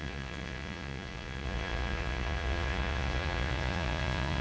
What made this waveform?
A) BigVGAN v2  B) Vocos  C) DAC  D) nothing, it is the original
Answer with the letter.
B